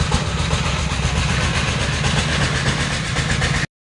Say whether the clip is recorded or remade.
recorded